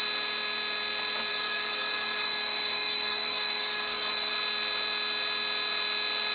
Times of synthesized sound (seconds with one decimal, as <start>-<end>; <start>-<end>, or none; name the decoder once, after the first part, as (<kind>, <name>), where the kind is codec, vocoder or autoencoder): 1.3-4.3 (codec, DAC)